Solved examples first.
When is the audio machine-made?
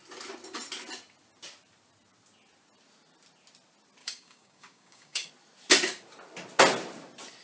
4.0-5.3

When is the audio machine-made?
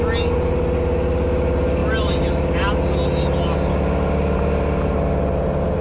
none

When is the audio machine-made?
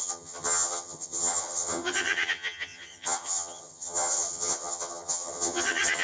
0.0-6.0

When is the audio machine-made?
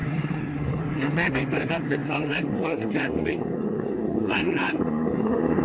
0.0-5.6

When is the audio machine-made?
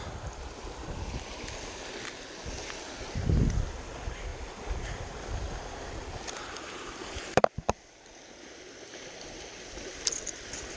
none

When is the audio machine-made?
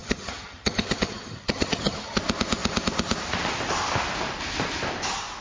0.0-2.2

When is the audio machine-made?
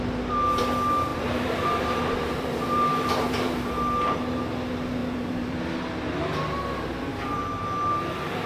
1.1-3.7; 5.0-5.6; 7.1-8.0